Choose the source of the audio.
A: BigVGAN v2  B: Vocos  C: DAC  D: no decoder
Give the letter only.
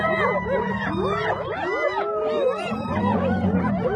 D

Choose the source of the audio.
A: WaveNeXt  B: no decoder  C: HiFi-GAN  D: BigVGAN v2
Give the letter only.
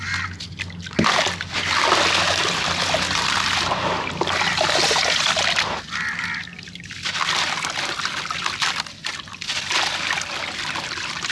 B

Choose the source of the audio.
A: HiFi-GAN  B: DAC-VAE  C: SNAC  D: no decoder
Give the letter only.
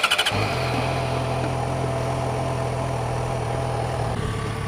D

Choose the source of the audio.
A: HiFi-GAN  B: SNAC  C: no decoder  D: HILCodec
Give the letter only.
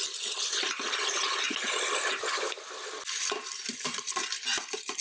C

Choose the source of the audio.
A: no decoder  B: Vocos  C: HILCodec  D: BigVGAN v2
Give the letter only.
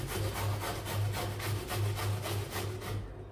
A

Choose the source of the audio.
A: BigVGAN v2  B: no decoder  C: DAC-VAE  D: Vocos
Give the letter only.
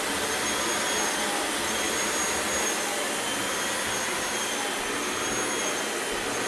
B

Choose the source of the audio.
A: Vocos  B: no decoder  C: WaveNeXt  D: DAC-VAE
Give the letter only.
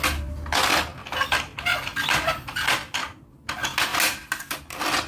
B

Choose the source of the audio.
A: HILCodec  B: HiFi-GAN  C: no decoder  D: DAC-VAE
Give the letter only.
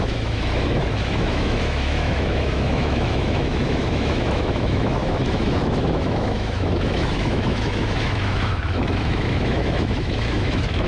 D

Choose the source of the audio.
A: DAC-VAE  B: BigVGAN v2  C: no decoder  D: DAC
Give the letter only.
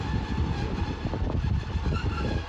B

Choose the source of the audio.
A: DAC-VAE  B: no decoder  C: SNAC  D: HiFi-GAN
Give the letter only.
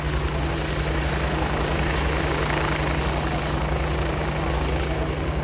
B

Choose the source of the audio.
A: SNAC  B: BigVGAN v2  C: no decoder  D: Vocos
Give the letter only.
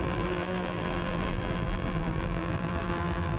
B